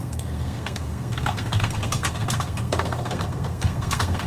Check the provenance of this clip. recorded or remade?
remade